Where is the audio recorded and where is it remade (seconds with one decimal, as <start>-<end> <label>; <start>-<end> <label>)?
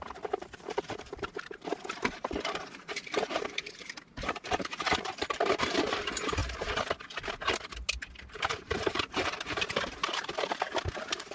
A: 0.0-6.4 remade; 6.4-8.1 recorded; 8.1-11.3 remade